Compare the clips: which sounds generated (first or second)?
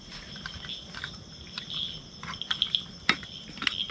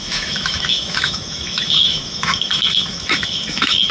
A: second